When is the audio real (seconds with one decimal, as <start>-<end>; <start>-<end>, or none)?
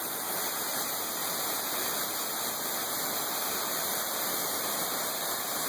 0.0-5.7